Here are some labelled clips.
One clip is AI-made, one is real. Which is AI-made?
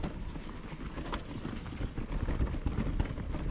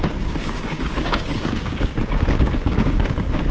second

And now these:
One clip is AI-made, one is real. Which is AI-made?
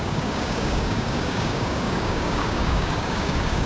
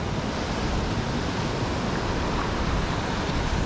first